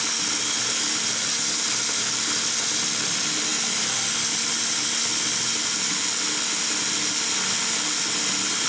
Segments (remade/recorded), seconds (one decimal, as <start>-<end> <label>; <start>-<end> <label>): 0.0-8.7 recorded